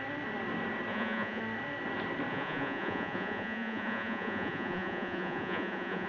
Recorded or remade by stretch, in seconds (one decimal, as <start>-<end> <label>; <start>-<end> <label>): 0.0-0.9 recorded; 0.9-1.4 remade; 1.4-2.3 recorded; 2.3-6.1 remade